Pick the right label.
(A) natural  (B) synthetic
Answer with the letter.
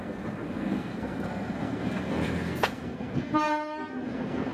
B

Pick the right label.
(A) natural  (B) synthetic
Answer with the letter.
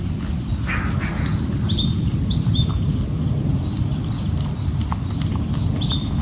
A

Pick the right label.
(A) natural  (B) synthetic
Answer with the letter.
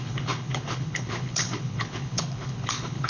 B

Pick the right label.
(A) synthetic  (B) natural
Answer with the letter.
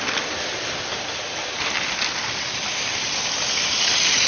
B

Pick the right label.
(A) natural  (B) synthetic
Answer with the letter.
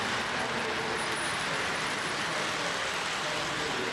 A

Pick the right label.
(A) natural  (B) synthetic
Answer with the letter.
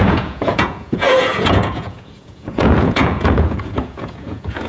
B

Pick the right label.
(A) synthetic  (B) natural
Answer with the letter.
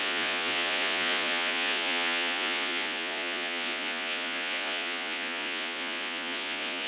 A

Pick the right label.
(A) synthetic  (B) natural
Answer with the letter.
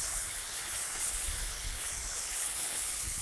A